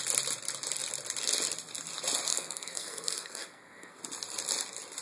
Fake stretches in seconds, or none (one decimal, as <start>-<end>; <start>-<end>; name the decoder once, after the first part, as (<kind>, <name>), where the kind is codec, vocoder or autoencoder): 2.3-4.0 (codec, SNAC)